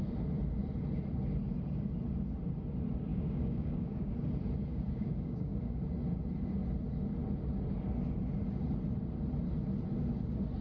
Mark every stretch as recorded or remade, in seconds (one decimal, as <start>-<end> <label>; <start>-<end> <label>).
0.0-3.1 recorded; 3.1-4.1 remade; 4.1-4.7 recorded; 4.7-5.8 remade; 5.8-10.6 recorded